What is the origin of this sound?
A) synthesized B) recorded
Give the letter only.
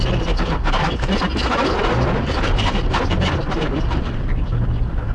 B